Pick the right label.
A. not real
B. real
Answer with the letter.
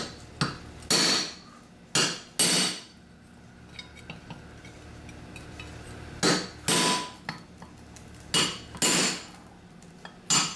B